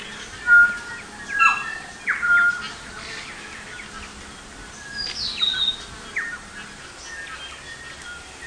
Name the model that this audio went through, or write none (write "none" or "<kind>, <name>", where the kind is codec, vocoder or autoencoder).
none